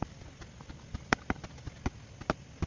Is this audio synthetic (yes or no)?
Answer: no